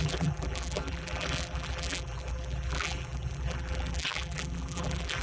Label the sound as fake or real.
fake